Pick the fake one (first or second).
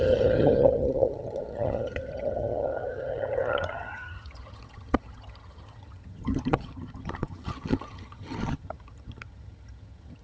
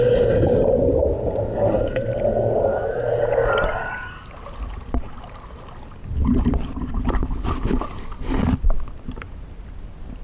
first